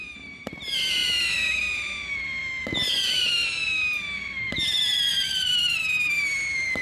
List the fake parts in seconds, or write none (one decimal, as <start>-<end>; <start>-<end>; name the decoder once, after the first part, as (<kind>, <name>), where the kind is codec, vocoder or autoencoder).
5.1-5.8 (vocoder, BigVGAN v2)